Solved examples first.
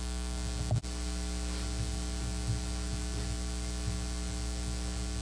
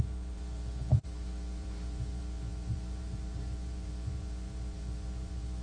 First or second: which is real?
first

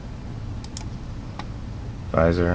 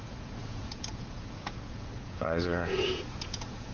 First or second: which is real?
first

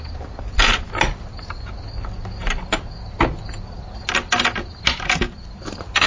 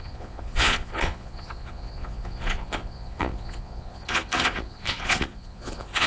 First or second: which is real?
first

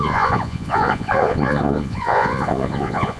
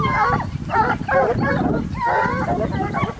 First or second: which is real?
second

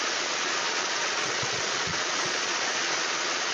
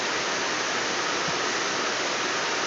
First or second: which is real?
second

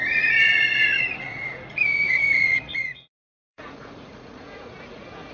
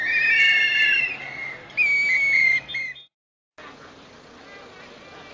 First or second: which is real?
second